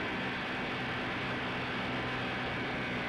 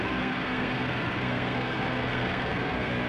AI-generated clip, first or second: second